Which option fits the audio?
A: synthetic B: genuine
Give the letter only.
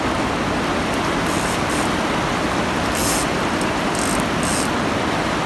B